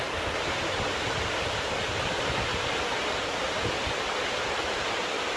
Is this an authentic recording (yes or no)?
yes